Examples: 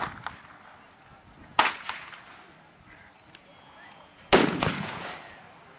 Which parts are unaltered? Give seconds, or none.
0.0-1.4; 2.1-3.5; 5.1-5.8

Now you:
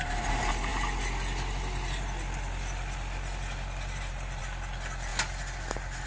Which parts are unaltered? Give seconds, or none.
0.0-6.1

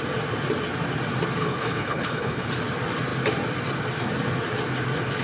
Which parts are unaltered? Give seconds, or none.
0.0-1.4; 2.5-5.2

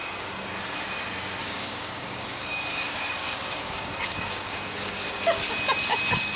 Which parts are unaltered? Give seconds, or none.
0.5-1.4; 5.2-6.4

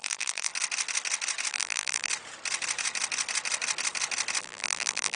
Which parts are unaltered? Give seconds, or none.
0.5-1.5; 2.1-4.4

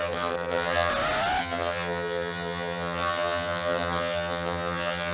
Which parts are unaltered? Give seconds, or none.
0.9-1.4

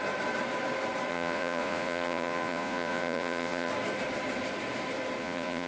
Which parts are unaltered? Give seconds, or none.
0.0-1.1; 3.7-5.2

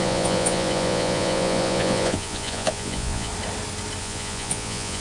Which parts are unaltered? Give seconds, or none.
3.3-4.0